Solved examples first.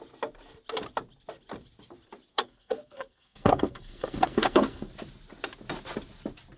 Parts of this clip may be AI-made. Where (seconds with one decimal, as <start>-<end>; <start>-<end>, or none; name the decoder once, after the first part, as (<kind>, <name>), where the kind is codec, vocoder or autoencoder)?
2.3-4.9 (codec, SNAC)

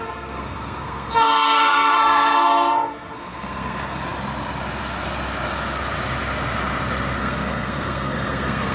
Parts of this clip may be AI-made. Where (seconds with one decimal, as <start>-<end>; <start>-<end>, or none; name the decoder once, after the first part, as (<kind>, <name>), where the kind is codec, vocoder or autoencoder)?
0.0-4.0 (codec, SNAC); 7.2-8.7

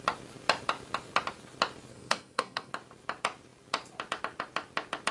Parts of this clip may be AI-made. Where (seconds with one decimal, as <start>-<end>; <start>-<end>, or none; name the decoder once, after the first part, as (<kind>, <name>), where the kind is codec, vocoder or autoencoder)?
1.9-2.7 (codec, SNAC)

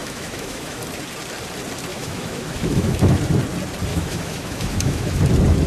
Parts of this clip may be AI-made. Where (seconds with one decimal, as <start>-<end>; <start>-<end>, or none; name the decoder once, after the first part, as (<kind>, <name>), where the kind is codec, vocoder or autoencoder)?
0.0-0.8 (autoencoder, DAC-VAE); 1.9-3.2; 3.9-5.2

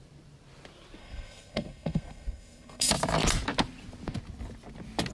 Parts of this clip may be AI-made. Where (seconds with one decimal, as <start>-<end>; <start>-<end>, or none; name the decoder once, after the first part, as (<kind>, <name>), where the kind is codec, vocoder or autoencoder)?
1.0-2.9 (codec, SNAC)

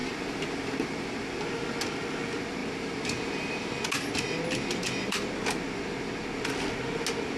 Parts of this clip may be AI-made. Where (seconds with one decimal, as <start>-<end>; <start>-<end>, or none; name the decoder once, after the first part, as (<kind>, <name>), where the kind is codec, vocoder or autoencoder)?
0.0-1.9 (vocoder, BigVGAN v2); 2.6-3.7

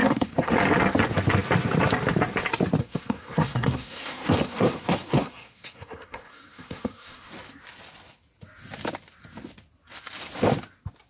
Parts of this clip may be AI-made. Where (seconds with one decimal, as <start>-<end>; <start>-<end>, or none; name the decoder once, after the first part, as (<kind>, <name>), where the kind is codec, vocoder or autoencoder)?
0.0-0.5 (codec, SNAC); 2.8-7.3